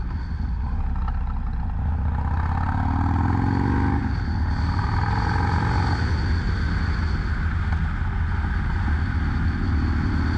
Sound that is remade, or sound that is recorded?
recorded